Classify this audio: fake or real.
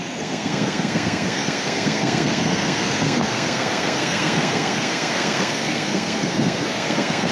fake